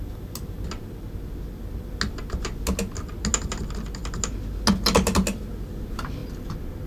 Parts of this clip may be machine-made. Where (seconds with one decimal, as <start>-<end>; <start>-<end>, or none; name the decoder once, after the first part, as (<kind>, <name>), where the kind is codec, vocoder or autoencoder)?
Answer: none

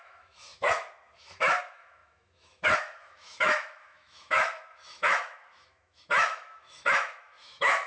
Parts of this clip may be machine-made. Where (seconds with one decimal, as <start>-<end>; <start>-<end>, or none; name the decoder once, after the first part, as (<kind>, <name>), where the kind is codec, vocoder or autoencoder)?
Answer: 0.0-7.9 (autoencoder, DAC-VAE)

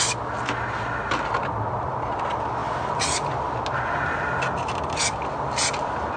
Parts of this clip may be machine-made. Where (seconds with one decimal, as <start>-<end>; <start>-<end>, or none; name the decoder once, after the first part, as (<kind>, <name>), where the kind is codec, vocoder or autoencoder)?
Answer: none

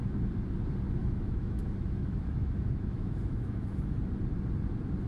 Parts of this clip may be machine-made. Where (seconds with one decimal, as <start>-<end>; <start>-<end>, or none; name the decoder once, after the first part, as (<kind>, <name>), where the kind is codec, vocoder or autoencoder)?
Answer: 1.0-4.1 (autoencoder, DAC-VAE)

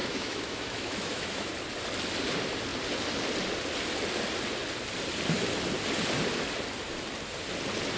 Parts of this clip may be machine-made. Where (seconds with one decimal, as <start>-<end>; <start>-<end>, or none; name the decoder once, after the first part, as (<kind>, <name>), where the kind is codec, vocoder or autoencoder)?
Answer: 0.0-1.5 (autoencoder, DAC-VAE)

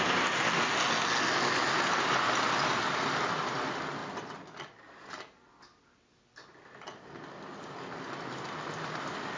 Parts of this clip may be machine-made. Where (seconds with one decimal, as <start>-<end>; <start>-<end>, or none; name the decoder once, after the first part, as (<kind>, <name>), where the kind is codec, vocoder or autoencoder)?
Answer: none